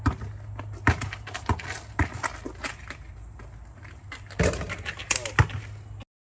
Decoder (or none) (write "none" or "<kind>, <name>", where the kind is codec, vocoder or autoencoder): none